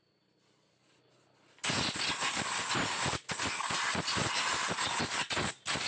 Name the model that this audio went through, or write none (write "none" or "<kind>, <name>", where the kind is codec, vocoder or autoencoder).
none